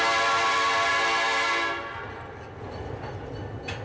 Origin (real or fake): real